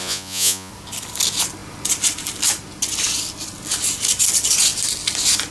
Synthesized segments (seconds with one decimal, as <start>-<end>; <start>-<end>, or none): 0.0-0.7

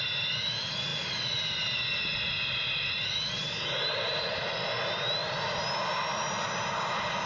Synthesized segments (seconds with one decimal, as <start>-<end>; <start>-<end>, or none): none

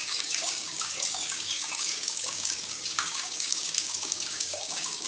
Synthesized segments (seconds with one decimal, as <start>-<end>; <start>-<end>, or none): 0.0-5.1

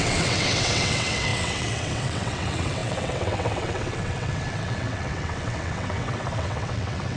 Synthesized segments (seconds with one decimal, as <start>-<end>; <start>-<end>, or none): 0.0-7.2